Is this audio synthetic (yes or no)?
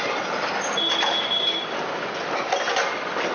no